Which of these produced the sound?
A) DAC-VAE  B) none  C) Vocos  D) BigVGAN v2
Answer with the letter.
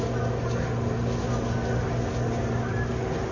B